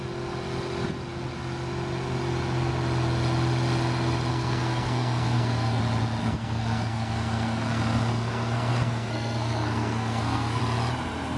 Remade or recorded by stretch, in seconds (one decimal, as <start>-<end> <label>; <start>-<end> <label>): 0.0-4.3 recorded; 4.3-5.8 remade; 5.8-6.2 recorded; 6.2-10.6 remade; 10.6-11.4 recorded

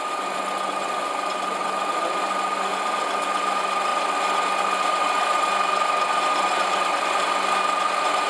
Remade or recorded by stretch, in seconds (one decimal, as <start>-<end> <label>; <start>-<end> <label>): 0.0-8.3 recorded

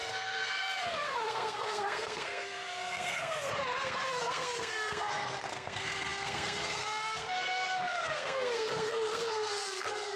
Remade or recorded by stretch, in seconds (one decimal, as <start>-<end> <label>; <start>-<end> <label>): 0.0-10.2 remade

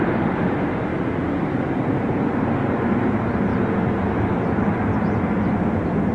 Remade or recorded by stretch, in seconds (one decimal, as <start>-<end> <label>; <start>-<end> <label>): 0.0-6.1 recorded